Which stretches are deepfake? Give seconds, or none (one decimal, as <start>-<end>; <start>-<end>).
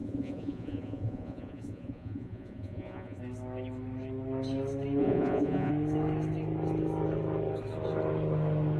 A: 0.0-3.2; 5.0-5.7